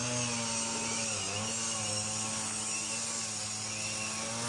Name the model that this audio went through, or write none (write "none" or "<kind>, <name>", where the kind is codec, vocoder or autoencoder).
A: none